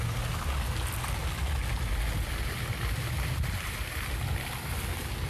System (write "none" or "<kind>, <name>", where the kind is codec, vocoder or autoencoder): none